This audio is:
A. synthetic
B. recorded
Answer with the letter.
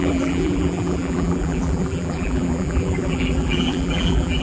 A